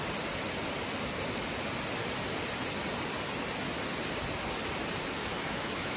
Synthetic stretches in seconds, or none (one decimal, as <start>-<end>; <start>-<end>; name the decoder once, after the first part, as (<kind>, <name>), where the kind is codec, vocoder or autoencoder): 5.2-6.0 (autoencoder, DAC-VAE)